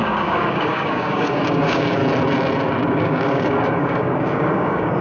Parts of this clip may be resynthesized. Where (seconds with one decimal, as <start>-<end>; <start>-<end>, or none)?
0.0-2.0; 2.9-5.0